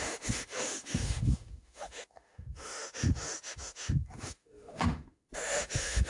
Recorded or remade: remade